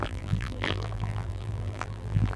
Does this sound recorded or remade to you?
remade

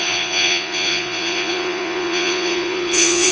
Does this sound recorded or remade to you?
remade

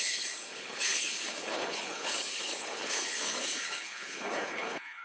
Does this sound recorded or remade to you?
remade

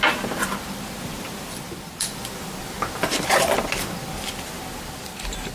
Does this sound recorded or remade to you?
recorded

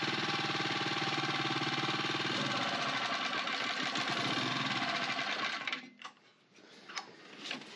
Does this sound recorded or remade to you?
recorded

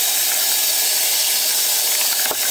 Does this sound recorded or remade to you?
recorded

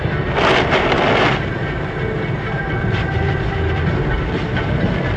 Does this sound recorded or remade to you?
recorded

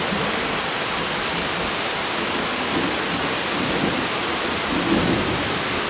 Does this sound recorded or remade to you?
recorded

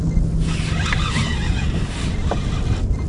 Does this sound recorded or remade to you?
recorded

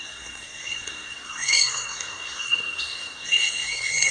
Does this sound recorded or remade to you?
remade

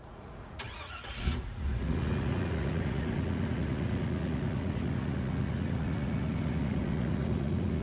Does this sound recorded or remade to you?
remade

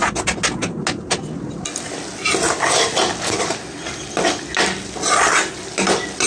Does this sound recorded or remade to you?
recorded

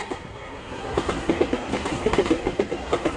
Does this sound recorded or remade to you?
remade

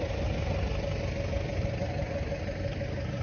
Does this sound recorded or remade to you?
recorded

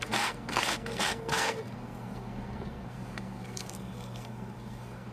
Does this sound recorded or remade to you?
remade